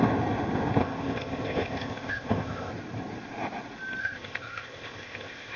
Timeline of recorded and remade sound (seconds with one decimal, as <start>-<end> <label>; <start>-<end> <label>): 0.0-0.8 recorded; 0.8-2.7 remade; 2.7-4.0 recorded; 4.0-5.6 remade

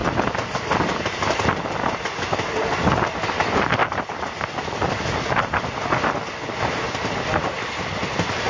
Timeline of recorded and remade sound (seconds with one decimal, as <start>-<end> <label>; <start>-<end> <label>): 0.0-1.7 remade; 1.7-3.8 recorded; 3.8-4.4 remade; 4.4-8.5 recorded

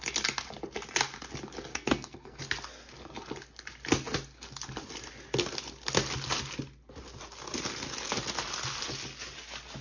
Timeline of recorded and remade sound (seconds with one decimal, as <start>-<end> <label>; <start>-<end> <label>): 0.0-1.7 recorded; 1.7-2.4 remade; 2.4-9.8 recorded